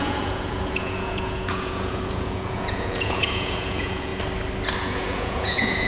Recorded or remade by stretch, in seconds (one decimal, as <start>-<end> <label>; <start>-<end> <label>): 0.0-4.1 remade; 4.1-4.8 recorded; 4.8-5.9 remade